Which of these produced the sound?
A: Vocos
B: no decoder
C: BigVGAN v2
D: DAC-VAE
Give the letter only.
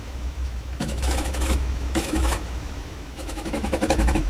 D